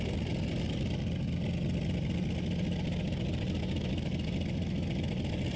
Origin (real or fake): real